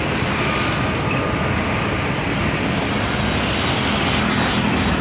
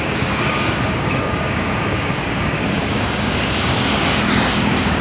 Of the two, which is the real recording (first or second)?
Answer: first